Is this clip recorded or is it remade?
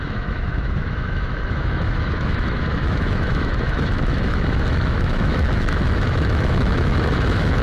remade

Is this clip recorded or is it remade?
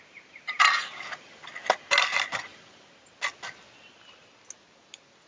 recorded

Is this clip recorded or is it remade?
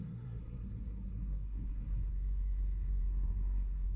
remade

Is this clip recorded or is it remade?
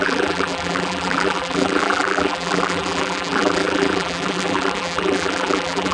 remade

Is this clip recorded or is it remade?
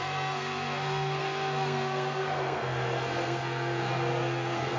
remade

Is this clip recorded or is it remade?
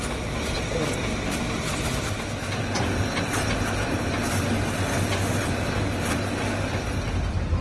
recorded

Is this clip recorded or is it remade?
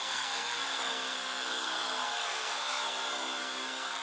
remade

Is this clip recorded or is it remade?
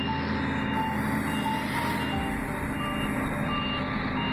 recorded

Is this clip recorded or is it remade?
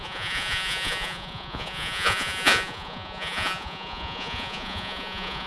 remade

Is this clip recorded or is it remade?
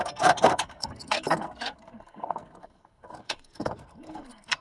remade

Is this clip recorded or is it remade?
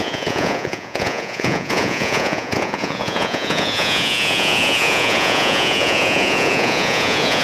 remade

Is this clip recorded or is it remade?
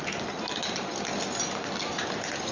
recorded